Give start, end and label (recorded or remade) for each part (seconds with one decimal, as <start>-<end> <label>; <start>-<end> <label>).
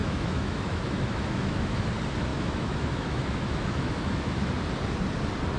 0.0-1.9 remade; 1.9-2.3 recorded; 2.3-4.5 remade; 4.5-5.6 recorded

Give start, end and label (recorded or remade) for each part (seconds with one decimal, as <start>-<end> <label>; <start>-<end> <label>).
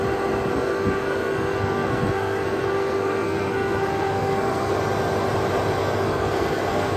0.0-0.5 recorded; 0.5-4.7 remade; 4.7-5.8 recorded; 5.8-7.0 remade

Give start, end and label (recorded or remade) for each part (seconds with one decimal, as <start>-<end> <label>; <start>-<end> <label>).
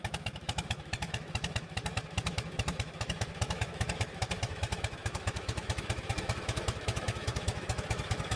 0.0-8.4 remade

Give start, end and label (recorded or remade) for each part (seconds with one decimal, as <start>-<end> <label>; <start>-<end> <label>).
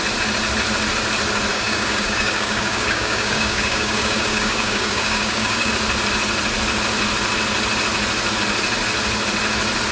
0.0-1.5 recorded; 1.5-5.7 remade; 5.7-9.9 recorded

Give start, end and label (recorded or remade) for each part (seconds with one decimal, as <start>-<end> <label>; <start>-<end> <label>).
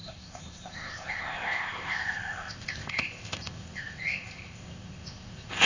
0.0-5.7 remade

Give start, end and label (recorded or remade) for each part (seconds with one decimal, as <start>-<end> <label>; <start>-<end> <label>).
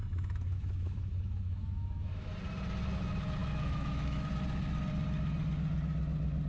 0.0-2.3 remade; 2.3-3.4 recorded; 3.4-4.3 remade; 4.3-6.5 recorded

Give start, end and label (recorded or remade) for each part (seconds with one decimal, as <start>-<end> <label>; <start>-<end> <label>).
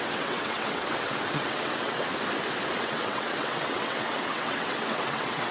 0.0-2.1 remade; 2.1-2.8 recorded; 2.8-5.5 remade